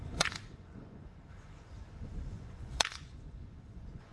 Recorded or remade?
remade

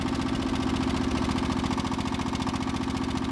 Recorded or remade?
recorded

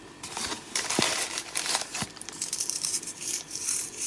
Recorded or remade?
remade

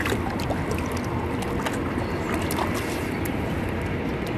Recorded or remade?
recorded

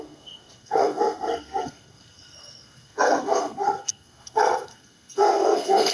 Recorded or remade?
remade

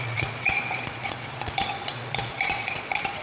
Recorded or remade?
remade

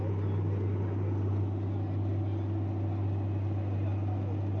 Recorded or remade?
recorded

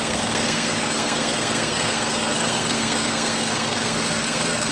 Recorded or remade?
remade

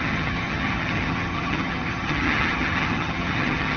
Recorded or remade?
remade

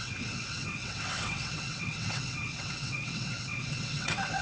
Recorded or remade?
remade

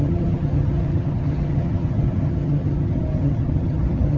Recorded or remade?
remade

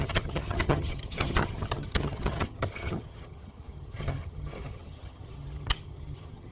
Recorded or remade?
remade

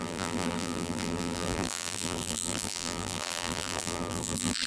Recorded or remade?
remade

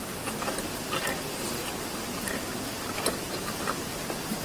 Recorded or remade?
recorded